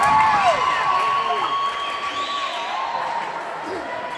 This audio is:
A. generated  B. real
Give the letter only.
B